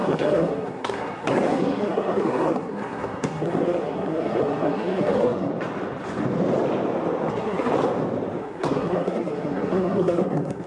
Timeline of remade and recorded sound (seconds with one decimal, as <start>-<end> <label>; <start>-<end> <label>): 0.0-5.5 remade; 5.5-7.3 recorded; 7.3-7.7 remade; 7.7-8.4 recorded; 8.4-10.7 remade